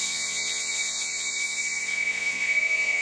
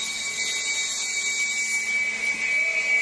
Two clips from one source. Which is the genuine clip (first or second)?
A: second